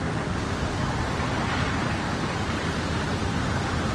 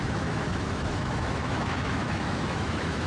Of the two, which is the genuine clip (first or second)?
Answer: first